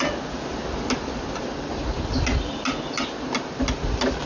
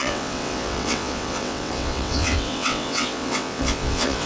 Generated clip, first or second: second